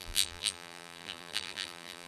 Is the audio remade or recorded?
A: remade